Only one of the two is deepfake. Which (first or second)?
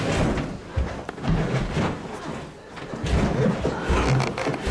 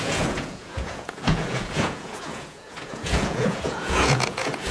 second